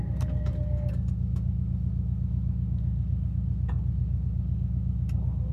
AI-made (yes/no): yes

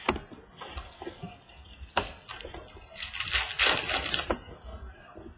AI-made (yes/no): no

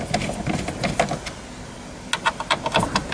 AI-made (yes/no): no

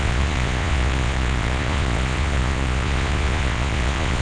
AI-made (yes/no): yes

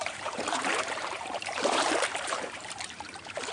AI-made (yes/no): yes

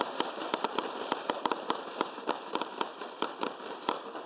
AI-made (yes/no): yes